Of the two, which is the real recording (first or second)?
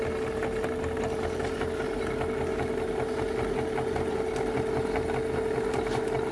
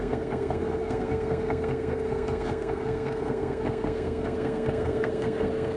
first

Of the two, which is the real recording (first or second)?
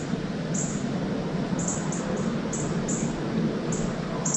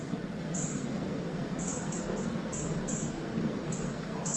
first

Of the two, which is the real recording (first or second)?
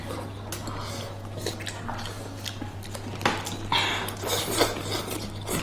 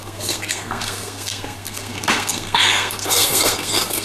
first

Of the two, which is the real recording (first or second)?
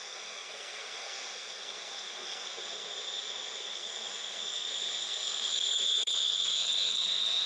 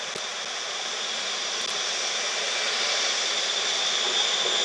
second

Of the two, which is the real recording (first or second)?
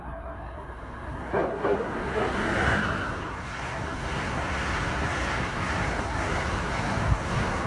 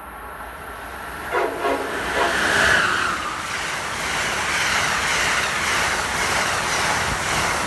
second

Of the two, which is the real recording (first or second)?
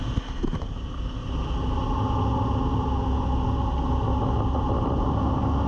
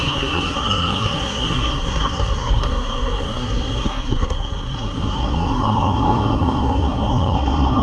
first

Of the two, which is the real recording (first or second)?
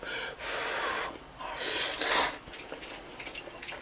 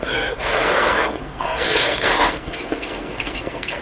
first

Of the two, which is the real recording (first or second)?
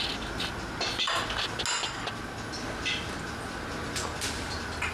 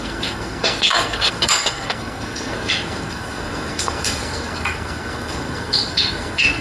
first